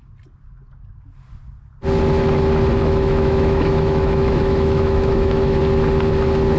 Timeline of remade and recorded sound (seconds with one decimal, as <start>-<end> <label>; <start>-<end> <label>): 0.0-2.8 recorded; 2.8-5.6 remade; 5.6-6.6 recorded